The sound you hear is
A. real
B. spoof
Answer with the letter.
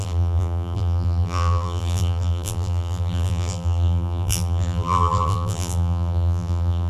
B